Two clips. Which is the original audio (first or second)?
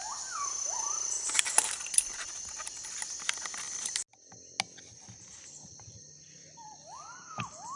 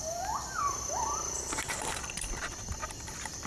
first